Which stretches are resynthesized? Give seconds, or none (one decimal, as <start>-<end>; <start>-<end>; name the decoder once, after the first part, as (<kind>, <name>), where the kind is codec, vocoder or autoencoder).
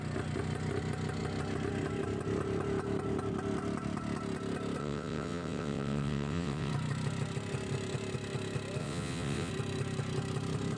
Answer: 4.8-6.7 (vocoder, WaveNeXt); 8.8-9.5